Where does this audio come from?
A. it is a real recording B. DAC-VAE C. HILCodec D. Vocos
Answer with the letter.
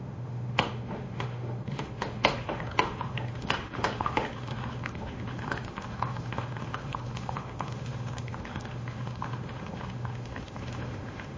B